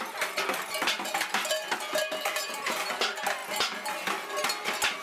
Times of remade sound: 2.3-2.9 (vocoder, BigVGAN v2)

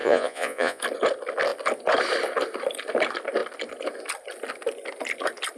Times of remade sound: 0.0-0.8 (vocoder, Vocos)